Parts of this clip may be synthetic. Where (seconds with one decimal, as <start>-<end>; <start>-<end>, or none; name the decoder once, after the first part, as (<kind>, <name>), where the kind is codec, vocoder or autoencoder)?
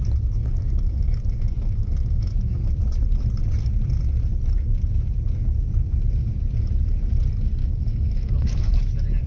0.4-2.7 (autoencoder, DAC-VAE); 7.6-8.7